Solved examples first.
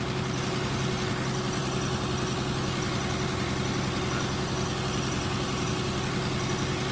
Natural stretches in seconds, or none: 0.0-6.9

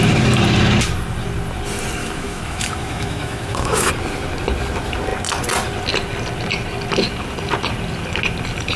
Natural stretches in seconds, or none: 0.0-2.0; 3.9-8.8

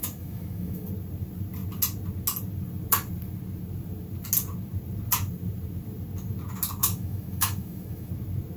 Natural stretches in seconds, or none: 0.9-6.8; 8.1-8.6